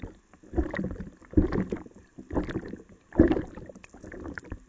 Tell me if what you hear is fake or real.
real